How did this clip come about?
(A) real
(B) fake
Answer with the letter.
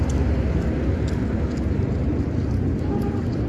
A